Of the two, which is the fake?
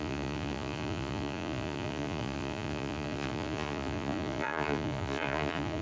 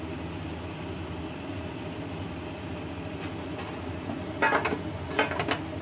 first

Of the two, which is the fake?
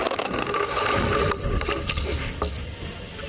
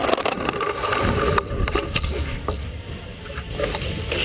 second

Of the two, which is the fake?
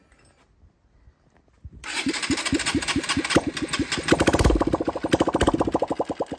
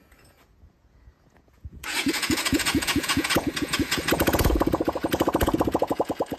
second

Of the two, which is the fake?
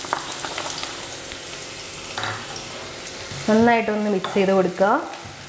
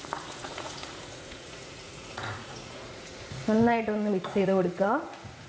second